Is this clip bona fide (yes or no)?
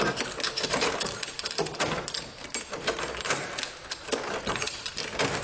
yes